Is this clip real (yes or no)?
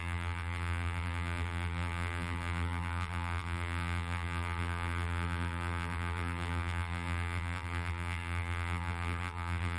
no